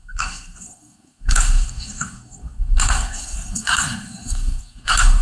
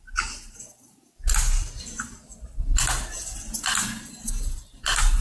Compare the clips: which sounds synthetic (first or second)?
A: first